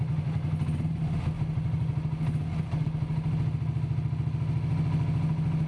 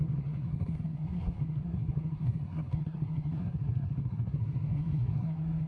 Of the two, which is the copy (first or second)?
second